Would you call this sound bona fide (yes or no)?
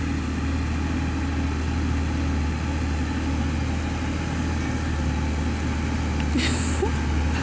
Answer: yes